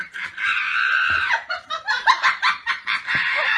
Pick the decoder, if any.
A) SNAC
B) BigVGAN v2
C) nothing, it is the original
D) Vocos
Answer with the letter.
B